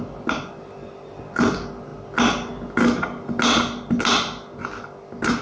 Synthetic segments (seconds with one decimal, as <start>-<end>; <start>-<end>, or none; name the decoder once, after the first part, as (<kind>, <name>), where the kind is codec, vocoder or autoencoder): none